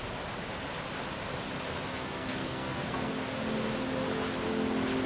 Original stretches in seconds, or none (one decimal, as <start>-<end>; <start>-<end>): 0.0-1.9; 3.1-5.1